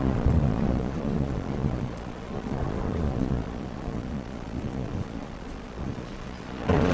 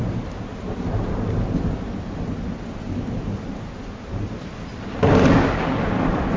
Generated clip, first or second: first